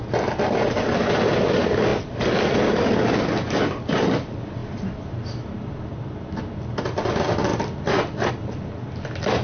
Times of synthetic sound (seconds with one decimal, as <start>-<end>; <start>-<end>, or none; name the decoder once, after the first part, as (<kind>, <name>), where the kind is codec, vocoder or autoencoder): none